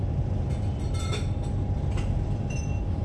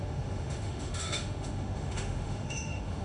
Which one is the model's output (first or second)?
second